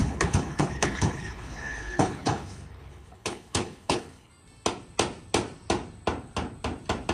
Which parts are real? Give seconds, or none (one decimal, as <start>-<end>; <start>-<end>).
4.3-7.1